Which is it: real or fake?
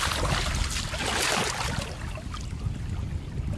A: real